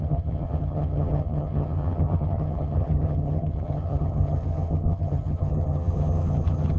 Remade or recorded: remade